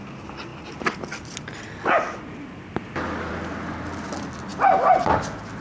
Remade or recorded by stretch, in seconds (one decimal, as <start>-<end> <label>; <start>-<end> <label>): 0.0-5.6 recorded